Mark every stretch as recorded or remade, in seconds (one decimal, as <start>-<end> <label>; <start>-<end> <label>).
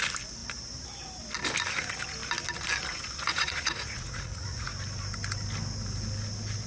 0.0-2.9 recorded; 2.9-4.7 remade; 4.7-6.7 recorded